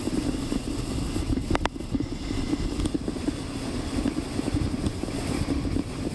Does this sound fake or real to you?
real